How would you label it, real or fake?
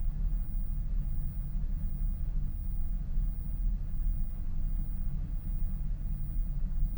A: real